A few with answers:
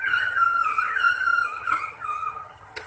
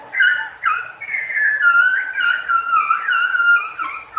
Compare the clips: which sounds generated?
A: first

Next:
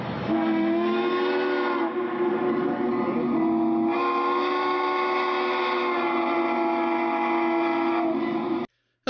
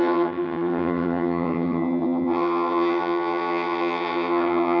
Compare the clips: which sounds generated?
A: second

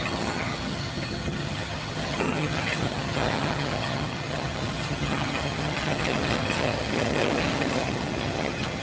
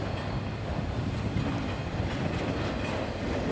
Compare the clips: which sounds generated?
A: first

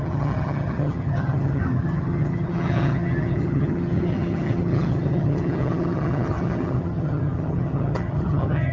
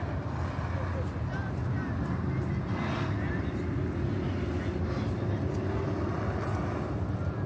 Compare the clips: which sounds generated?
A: first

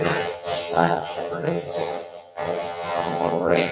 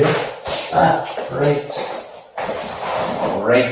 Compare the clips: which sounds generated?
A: first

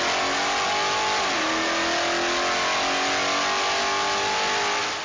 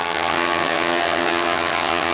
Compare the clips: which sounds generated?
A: second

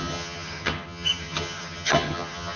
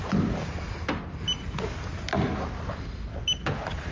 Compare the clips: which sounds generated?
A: first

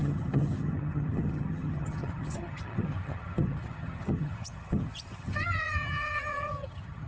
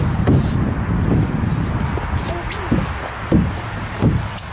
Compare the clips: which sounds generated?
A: first